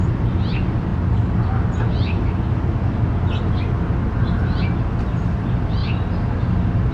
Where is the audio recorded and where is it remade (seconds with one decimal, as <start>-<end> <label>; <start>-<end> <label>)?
0.0-0.9 remade; 0.9-5.0 recorded; 5.0-5.8 remade; 5.8-6.9 recorded